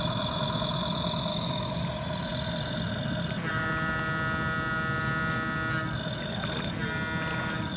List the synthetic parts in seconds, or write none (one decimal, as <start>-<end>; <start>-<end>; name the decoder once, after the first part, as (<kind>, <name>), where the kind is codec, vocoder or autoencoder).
1.3-1.8 (codec, DAC)